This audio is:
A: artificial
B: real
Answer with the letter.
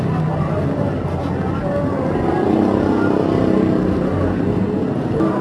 B